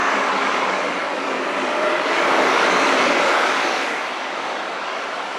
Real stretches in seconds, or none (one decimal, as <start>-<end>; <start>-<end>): none